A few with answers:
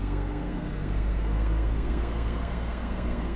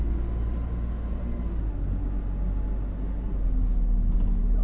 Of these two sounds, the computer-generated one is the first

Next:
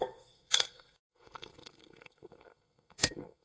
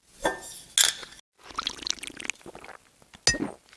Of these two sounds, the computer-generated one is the first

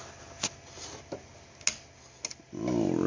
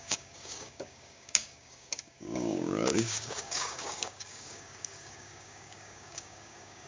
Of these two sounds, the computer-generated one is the second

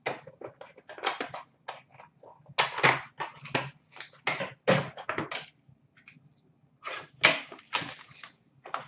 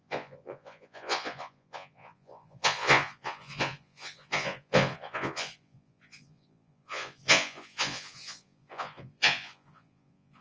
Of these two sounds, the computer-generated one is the second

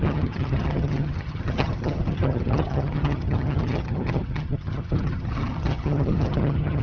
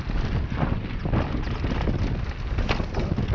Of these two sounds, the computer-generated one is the first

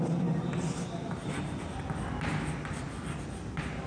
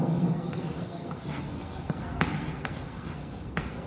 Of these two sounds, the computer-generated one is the second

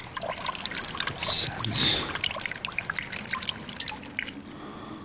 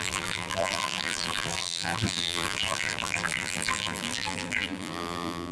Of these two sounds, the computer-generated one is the second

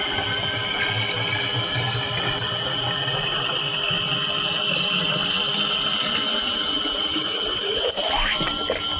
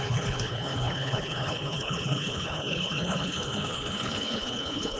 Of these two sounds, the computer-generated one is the second